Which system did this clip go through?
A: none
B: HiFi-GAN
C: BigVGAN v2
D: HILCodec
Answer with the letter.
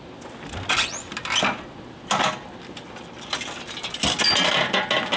A